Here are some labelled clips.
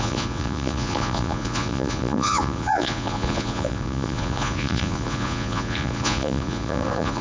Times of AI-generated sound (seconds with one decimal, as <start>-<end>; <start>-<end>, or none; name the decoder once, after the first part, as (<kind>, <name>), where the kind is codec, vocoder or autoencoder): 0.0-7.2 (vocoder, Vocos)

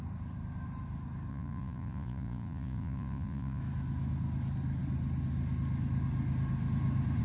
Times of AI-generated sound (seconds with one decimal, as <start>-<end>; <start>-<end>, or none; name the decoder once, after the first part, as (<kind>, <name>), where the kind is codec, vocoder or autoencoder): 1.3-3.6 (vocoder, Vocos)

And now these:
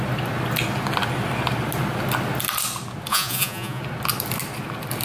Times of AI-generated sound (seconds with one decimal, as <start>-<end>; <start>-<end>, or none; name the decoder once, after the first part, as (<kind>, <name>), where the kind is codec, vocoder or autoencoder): 3.1-3.8 (vocoder, Vocos)